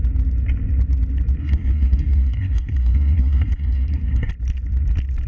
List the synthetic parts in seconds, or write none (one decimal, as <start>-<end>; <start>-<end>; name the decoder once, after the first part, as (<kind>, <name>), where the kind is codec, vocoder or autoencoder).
1.4-4.3 (codec, SNAC)